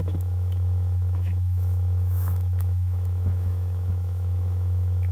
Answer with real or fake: fake